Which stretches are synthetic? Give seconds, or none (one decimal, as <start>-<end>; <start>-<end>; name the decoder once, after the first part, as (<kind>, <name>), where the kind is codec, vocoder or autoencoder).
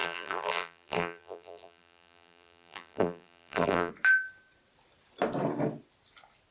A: 0.0-3.9 (vocoder, BigVGAN v2)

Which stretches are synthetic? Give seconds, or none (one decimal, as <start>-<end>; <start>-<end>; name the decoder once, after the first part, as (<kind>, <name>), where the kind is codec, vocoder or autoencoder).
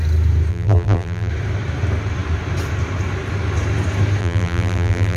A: 0.5-1.3 (vocoder, BigVGAN v2); 4.2-5.2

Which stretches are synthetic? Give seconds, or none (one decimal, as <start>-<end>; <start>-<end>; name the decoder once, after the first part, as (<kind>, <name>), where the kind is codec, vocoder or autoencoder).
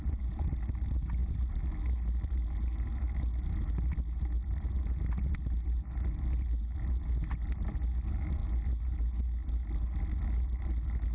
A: none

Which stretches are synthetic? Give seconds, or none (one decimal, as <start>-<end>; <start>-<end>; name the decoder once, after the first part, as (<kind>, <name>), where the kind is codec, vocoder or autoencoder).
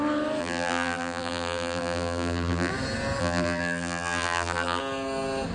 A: 0.4-2.7 (vocoder, BigVGAN v2); 3.2-4.8